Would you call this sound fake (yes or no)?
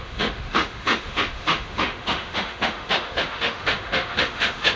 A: yes